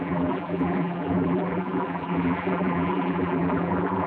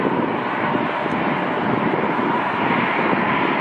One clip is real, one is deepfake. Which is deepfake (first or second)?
first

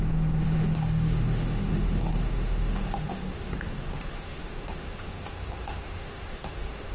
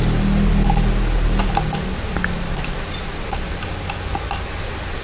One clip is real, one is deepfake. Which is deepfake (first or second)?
first